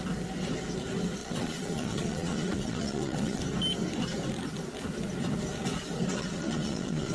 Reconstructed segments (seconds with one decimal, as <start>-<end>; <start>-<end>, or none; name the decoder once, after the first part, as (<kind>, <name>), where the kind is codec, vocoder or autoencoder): 1.2-3.4 (vocoder, Vocos); 6.1-7.1